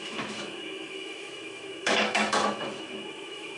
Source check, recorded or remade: remade